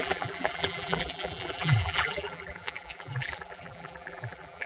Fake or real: fake